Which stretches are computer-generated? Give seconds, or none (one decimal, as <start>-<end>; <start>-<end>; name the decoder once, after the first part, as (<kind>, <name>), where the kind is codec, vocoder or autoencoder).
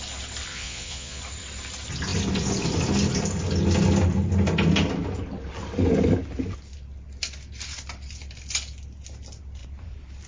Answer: 0.5-1.2 (vocoder, Vocos)